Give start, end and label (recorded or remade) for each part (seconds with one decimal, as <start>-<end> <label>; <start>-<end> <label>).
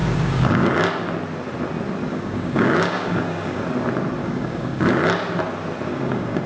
0.0-0.7 remade; 0.7-2.1 recorded; 2.1-3.6 remade; 3.6-4.2 recorded; 4.2-4.8 remade; 4.8-5.9 recorded; 5.9-6.5 remade